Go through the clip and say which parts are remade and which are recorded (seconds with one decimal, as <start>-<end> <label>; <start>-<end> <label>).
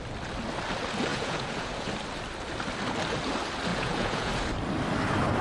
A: 0.0-1.1 recorded; 1.1-1.9 remade; 1.9-3.7 recorded; 3.7-4.3 remade; 4.3-5.4 recorded